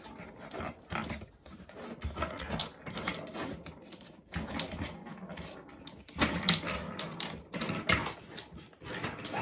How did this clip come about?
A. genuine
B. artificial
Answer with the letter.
A